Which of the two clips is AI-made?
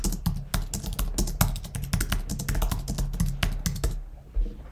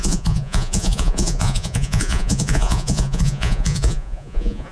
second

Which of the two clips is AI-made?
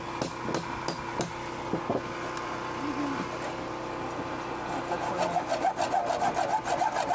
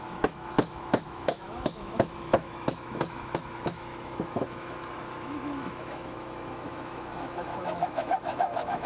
second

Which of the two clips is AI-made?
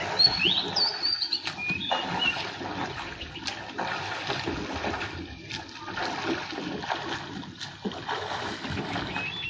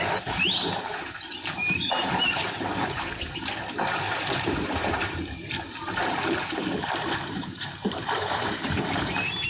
second